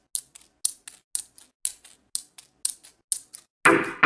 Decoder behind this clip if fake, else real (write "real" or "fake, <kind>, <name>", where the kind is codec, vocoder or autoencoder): real